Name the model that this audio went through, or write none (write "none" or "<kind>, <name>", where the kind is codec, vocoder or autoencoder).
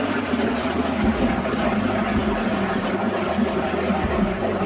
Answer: none